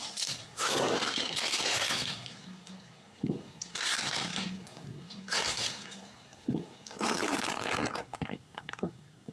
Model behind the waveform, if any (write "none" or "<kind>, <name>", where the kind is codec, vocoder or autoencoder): codec, SNAC